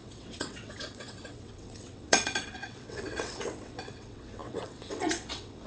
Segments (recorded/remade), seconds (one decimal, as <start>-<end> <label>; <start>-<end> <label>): 0.0-5.7 remade